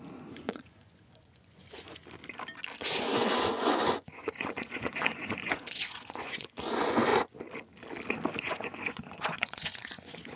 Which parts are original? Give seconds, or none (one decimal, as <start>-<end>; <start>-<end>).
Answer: 2.0-3.0; 7.1-8.4